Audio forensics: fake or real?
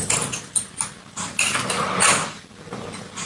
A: real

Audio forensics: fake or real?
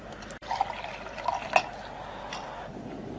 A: real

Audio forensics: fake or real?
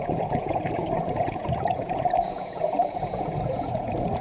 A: fake